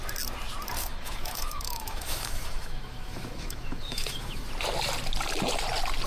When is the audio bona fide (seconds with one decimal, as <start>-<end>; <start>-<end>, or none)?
0.0-0.8; 4.5-6.1